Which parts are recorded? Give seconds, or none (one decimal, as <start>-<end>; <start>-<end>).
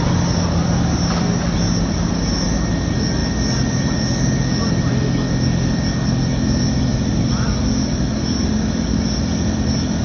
0.0-6.9; 7.5-10.0